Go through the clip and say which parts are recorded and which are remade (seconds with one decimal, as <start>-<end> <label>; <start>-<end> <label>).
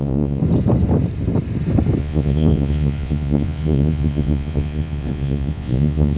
0.0-0.4 remade; 0.4-2.0 recorded; 2.0-6.2 remade